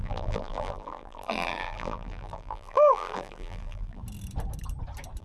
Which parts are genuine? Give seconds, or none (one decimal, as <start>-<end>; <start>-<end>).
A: 4.0-5.2